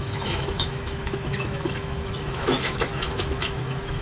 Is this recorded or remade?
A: remade